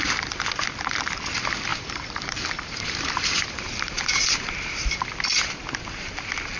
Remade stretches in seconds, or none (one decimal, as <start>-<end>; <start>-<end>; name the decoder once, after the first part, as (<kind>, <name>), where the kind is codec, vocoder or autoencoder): 1.7-4.0 (vocoder, BigVGAN v2)